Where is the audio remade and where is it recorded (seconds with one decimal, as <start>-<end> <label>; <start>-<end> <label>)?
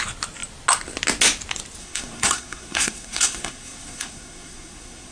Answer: 0.0-1.8 recorded; 1.8-5.1 remade